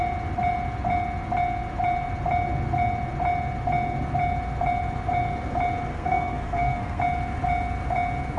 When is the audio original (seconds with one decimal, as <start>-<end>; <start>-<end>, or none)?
0.0-5.9; 7.0-8.4